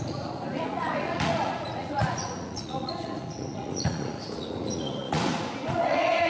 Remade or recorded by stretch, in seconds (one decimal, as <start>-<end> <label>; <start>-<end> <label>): 0.0-6.3 remade